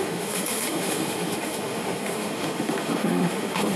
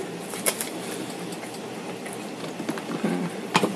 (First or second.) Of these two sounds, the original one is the second